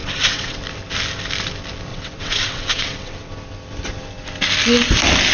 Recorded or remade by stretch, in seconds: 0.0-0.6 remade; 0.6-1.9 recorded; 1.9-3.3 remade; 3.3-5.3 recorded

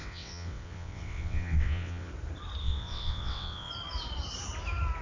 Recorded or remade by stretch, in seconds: 0.0-2.1 remade; 2.1-2.6 recorded; 2.6-3.7 remade; 3.7-5.0 recorded